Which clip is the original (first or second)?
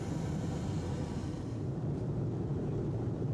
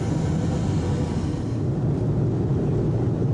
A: second